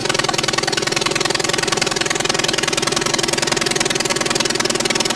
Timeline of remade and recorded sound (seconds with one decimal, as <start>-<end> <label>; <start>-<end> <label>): 0.0-5.2 recorded